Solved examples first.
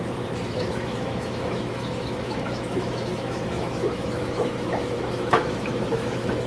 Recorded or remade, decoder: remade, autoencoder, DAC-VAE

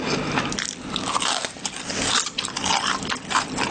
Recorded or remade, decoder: recorded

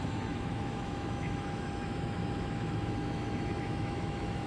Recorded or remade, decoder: remade, autoencoder, DAC-VAE